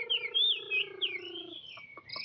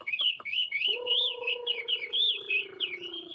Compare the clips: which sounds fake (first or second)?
second